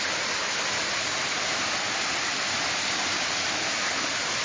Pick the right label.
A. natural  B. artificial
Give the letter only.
A